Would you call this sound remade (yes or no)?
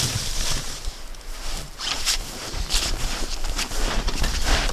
yes